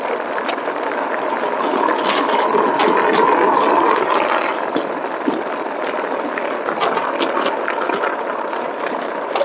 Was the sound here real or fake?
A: real